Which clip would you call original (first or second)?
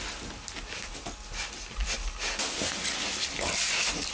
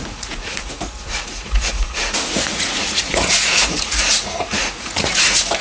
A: first